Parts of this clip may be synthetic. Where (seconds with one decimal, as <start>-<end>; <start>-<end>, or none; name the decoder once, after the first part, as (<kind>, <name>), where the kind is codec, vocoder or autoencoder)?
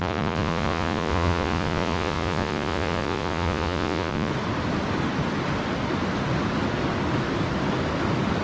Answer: 0.0-4.3 (vocoder, Vocos)